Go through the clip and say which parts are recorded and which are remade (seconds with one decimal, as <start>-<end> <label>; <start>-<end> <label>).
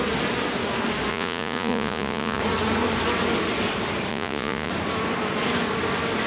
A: 0.0-1.1 recorded; 1.1-2.4 remade; 2.4-4.1 recorded; 4.1-4.7 remade; 4.7-6.3 recorded